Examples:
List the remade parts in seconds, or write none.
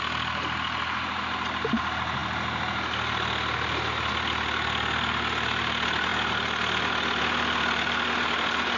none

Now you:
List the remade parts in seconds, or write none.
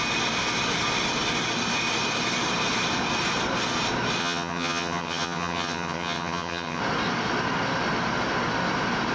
4.2-6.8 (vocoder, HiFi-GAN)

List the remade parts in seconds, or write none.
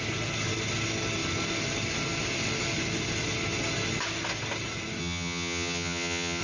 5.0-6.4 (vocoder, HiFi-GAN)